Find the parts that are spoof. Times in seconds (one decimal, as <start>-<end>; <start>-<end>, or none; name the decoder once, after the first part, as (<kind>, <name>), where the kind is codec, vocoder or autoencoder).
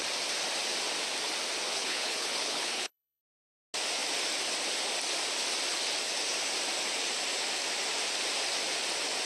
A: 1.7-3.2 (codec, HILCodec)